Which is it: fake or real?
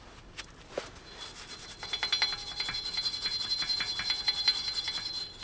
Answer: real